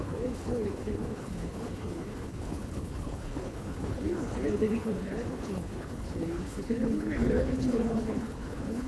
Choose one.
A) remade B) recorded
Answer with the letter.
A